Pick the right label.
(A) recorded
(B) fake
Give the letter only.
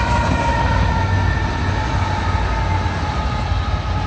A